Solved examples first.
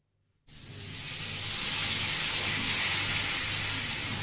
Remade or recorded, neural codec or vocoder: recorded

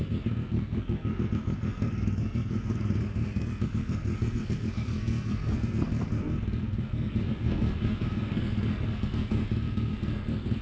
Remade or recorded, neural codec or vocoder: remade, codec, SNAC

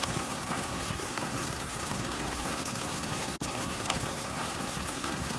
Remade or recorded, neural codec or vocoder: remade, codec, SNAC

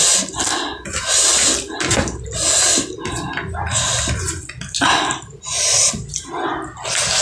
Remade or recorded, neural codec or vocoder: recorded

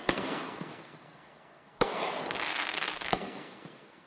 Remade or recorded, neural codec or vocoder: remade, codec, SNAC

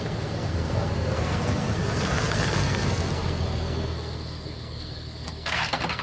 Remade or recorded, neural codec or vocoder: remade, codec, SNAC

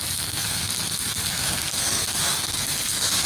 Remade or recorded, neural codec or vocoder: remade, codec, SNAC